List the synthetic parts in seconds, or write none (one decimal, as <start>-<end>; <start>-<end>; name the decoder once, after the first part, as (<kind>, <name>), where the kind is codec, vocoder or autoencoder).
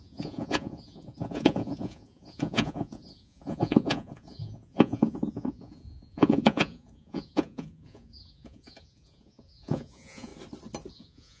0.0-10.3 (vocoder, Vocos); 10.9-11.4